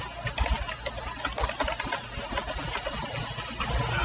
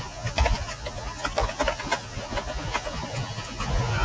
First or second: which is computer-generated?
second